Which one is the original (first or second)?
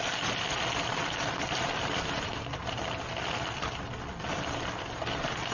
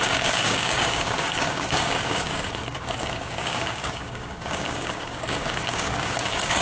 first